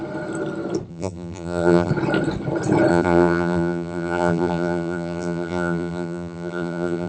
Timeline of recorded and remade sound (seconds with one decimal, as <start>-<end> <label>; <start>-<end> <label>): 0.0-0.9 recorded; 0.9-1.9 remade; 1.9-2.9 recorded; 2.9-7.1 remade

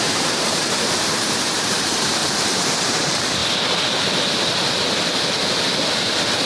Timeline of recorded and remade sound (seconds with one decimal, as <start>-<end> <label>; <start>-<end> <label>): 0.0-2.2 remade; 2.2-2.9 recorded; 2.9-3.4 remade; 3.4-6.5 recorded

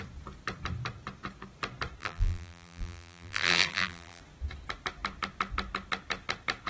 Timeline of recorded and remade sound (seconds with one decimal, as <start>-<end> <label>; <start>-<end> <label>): 0.0-2.0 recorded; 2.0-4.2 remade; 4.2-6.7 recorded

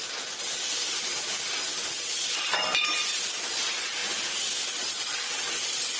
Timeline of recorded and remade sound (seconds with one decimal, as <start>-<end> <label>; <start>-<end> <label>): 0.0-1.7 recorded; 1.7-3.0 remade; 3.0-4.0 recorded; 4.0-5.3 remade; 5.3-6.0 recorded

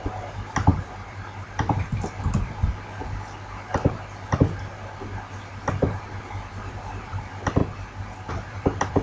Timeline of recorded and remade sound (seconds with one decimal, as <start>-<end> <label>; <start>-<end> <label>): 0.0-2.7 remade; 2.7-6.7 recorded; 6.7-7.6 remade; 7.6-8.3 recorded; 8.3-9.0 remade

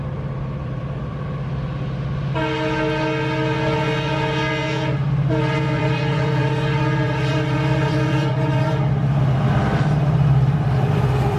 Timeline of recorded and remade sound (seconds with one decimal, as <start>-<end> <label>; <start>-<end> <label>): 0.0-1.1 remade; 1.1-4.9 recorded; 4.9-11.4 remade